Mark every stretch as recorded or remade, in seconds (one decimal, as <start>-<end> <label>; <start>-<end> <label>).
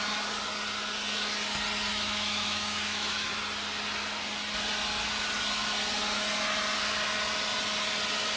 0.0-1.9 recorded; 1.9-3.4 remade; 3.4-8.4 recorded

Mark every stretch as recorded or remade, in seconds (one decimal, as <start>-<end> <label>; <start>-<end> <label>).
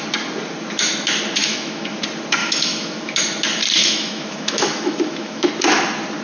0.0-1.4 recorded; 1.4-2.0 remade; 2.0-2.4 recorded; 2.4-3.2 remade; 3.2-3.8 recorded; 3.8-5.5 remade; 5.5-6.2 recorded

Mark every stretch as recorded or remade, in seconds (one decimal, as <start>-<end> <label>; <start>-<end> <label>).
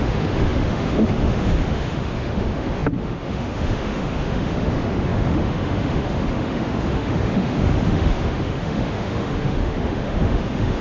0.0-10.8 remade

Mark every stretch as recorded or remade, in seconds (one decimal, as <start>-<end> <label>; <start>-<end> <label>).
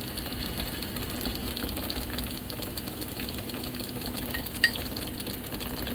0.0-1.4 recorded; 1.4-4.9 remade; 4.9-5.9 recorded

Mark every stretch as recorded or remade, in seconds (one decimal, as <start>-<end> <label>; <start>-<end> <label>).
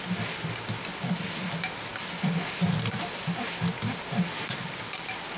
0.0-5.4 recorded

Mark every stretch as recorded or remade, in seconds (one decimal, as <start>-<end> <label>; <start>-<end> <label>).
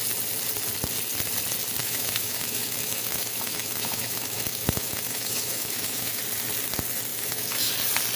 0.0-1.8 recorded; 1.8-6.2 remade; 6.2-7.1 recorded; 7.1-7.7 remade; 7.7-8.2 recorded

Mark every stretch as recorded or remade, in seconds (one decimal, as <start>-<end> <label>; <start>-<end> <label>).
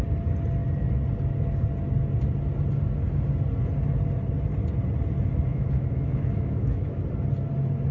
0.0-5.5 recorded; 5.5-7.0 remade; 7.0-7.9 recorded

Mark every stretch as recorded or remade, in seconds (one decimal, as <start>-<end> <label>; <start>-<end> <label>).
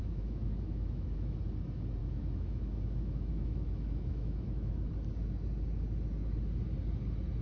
0.0-1.4 remade; 1.4-2.0 recorded; 2.0-4.9 remade; 4.9-7.4 recorded